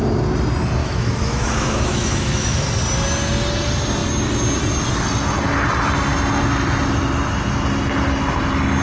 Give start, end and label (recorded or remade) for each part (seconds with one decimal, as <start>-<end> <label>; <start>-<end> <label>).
0.0-0.8 recorded; 0.8-2.6 remade; 2.6-8.8 recorded